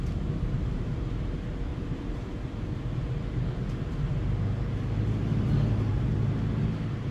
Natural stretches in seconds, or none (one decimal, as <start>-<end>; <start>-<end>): 0.0-1.7; 3.5-5.2; 6.1-7.1